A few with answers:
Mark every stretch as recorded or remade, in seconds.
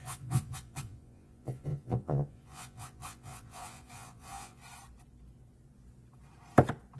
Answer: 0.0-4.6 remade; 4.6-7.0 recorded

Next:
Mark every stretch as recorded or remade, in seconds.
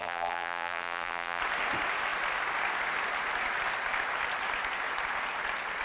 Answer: 0.0-1.4 remade; 1.4-5.8 recorded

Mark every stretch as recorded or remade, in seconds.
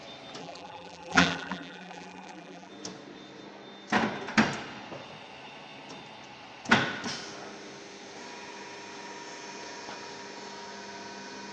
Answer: 0.0-0.4 recorded; 0.4-2.7 remade; 2.7-11.5 recorded